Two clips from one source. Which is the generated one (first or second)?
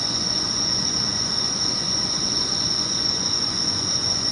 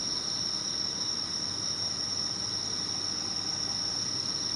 first